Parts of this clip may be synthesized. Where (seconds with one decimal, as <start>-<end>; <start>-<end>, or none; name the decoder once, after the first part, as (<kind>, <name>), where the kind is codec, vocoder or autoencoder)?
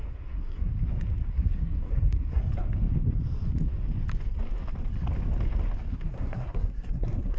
0.0-0.7 (codec, SNAC); 1.3-2.4; 5.9-7.4